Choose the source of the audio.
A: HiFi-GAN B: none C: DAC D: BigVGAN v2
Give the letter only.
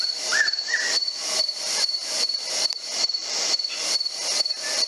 D